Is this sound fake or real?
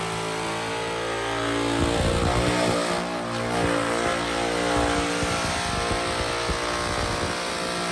real